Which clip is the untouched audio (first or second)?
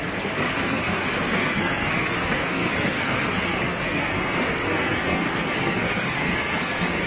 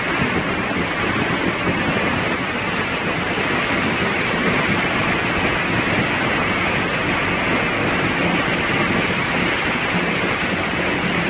second